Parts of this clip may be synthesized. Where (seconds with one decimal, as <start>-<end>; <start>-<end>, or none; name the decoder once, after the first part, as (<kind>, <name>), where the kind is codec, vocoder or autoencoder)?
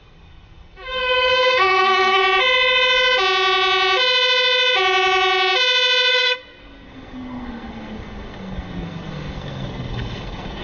0.0-2.2 (codec, SNAC); 6.1-10.6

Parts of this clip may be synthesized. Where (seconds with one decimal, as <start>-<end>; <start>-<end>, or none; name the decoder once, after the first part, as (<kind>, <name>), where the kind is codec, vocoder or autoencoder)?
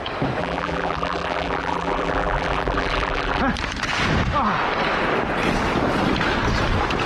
0.4-3.4 (vocoder, BigVGAN v2)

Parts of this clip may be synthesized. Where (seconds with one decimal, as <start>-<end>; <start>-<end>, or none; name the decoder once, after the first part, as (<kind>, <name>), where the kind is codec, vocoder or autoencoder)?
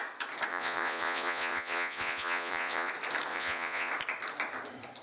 0.5-2.9 (vocoder, Vocos); 3.3-3.9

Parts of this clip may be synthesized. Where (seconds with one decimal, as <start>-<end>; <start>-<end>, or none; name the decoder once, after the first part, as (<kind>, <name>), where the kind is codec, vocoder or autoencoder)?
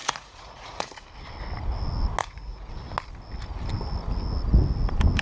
0.0-0.9 (vocoder, Vocos); 2.2-2.7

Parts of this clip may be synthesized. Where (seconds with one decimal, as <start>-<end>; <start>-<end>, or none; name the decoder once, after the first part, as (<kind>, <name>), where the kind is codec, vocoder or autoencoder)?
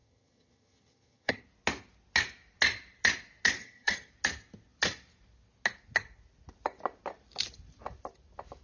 0.0-1.4 (vocoder, HiFi-GAN); 3.6-4.1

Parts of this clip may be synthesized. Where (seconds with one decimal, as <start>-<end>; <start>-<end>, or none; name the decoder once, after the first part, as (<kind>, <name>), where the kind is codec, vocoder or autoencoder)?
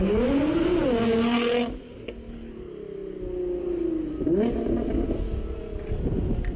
none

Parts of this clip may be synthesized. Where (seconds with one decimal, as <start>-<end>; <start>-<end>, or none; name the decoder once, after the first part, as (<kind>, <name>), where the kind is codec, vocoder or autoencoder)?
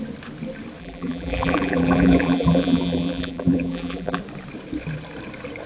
0.8-4.2 (vocoder, BigVGAN v2)